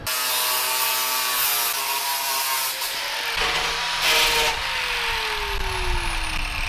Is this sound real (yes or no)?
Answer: yes